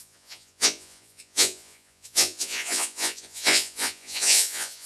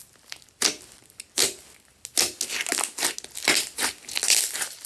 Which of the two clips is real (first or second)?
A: second